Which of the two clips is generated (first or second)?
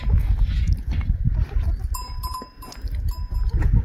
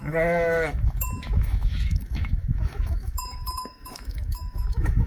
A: second